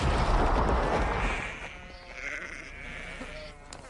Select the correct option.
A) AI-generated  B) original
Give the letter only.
B